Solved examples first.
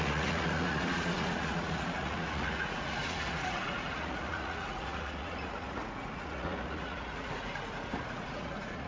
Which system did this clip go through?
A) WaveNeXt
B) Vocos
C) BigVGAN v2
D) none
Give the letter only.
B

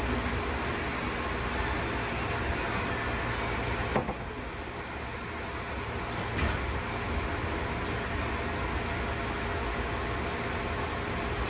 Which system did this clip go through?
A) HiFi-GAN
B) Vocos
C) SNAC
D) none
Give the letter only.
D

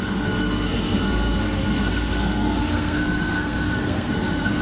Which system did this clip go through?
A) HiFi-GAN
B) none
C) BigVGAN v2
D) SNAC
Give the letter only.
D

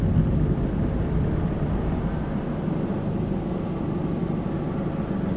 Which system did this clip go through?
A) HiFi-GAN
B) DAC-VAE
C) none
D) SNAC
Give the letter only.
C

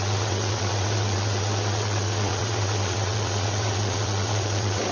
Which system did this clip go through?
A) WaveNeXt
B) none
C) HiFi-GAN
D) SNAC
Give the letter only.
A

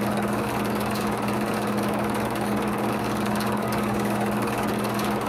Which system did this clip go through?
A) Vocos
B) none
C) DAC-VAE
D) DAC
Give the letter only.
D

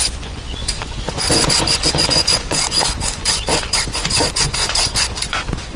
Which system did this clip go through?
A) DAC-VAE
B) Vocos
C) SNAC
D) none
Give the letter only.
B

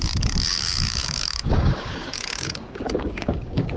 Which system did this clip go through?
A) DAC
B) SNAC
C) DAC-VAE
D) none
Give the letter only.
A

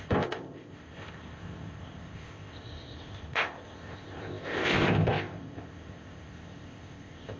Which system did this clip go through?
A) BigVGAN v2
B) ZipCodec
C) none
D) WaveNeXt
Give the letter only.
B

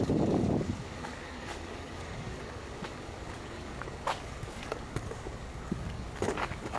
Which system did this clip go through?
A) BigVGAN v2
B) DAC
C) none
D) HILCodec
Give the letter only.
B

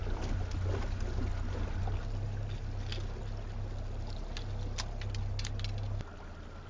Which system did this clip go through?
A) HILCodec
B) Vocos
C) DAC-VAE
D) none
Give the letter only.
D